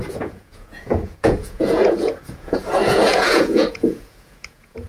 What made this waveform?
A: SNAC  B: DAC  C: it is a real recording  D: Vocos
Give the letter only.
D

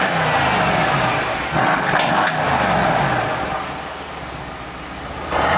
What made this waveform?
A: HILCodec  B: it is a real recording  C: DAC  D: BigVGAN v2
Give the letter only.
B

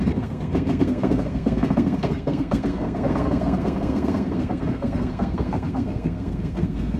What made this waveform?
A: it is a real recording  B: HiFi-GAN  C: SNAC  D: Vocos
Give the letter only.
C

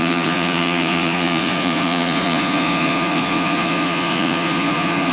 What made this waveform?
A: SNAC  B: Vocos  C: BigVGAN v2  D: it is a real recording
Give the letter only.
B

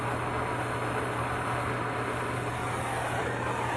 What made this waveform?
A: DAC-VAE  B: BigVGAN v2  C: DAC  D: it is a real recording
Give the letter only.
D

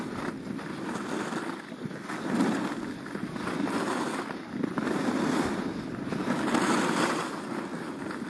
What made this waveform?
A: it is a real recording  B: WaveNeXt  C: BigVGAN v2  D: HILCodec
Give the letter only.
A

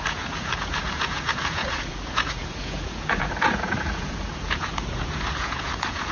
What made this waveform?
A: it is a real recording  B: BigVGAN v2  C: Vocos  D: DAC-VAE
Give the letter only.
C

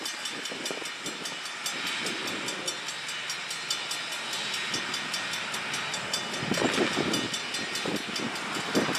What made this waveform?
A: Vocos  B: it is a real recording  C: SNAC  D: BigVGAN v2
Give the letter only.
B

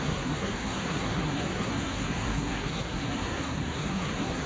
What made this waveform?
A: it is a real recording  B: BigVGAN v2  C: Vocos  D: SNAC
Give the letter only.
D